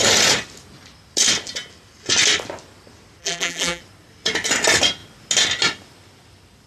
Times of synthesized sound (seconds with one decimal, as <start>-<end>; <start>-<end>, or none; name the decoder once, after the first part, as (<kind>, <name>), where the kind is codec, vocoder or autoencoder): 3.2-3.8 (vocoder, BigVGAN v2)